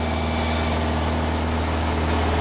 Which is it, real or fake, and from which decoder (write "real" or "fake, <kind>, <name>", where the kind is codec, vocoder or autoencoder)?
real